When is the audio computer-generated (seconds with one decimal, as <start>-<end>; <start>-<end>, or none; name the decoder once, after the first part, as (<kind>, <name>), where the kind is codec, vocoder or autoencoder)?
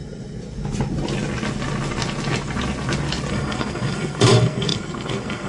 3.3-5.5 (codec, SNAC)